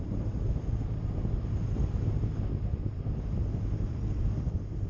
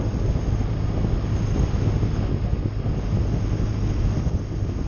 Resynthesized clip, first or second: first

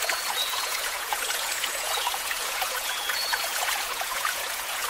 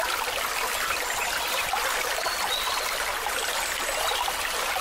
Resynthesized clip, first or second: first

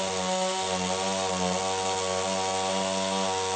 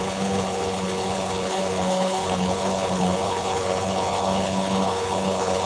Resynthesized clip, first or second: second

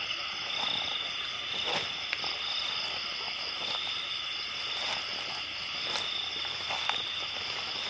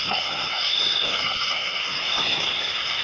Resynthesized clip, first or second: second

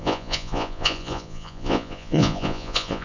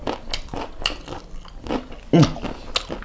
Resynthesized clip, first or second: first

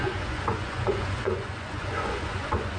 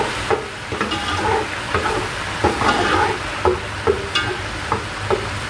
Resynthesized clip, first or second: first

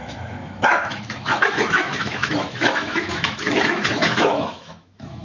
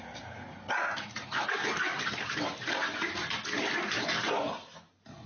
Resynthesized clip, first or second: first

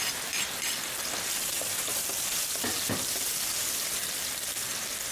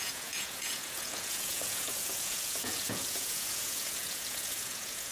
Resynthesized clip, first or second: second